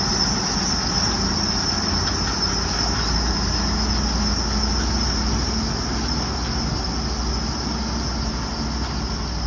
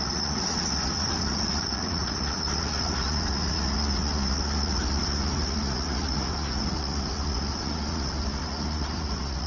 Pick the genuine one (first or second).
first